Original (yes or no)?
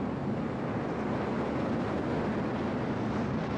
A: yes